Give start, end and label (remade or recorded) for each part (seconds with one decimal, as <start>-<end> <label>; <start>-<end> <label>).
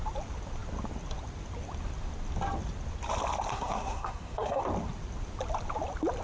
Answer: 0.0-3.5 recorded; 3.5-4.6 remade; 4.6-6.2 recorded